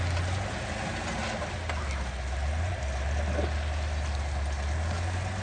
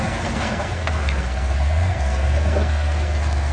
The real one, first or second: first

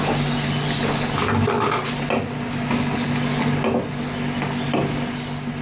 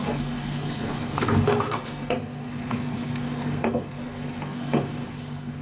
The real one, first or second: first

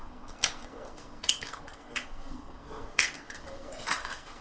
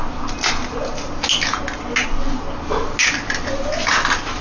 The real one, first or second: second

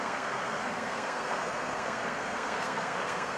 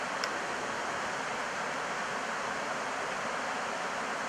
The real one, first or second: second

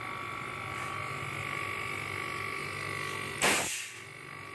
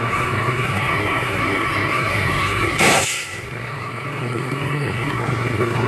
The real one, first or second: first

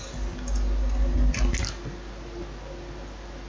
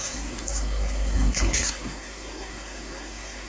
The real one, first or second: first